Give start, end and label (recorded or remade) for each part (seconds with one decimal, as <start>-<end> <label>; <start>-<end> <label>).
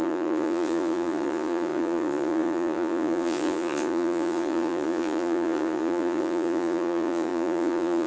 0.0-8.1 remade